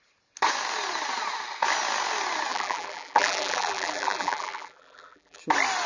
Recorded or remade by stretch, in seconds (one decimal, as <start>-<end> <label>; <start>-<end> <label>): 0.0-2.5 recorded; 2.5-5.4 remade; 5.4-5.9 recorded